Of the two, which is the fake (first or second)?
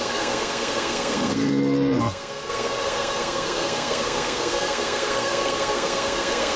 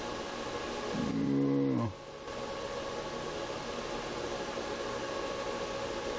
first